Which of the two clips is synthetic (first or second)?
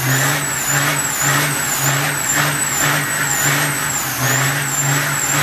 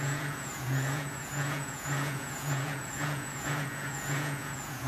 second